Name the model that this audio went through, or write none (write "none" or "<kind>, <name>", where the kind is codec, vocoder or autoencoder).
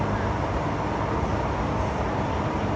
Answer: none